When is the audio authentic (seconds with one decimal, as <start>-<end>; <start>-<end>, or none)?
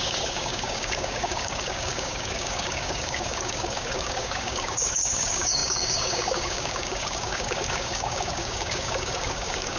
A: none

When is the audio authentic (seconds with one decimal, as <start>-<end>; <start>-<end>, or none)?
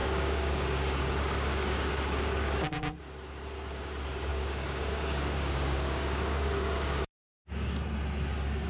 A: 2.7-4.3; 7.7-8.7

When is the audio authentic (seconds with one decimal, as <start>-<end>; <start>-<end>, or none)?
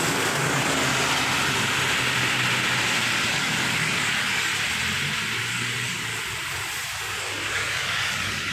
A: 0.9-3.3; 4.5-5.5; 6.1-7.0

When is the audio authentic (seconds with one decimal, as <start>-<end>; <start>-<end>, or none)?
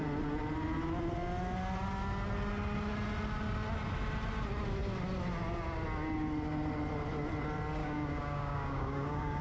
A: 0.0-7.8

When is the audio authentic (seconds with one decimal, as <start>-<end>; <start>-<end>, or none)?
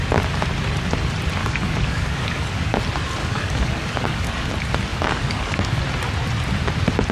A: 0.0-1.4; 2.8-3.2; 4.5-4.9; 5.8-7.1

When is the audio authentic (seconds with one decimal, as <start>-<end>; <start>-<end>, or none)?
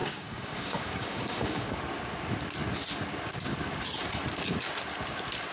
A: 1.8-5.5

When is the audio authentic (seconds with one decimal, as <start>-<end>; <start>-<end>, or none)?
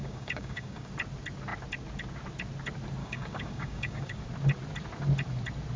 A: 0.9-3.0; 4.2-5.8